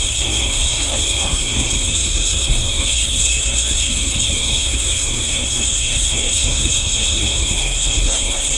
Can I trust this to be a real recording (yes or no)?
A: no